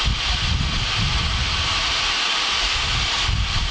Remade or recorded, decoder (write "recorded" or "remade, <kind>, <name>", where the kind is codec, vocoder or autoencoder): recorded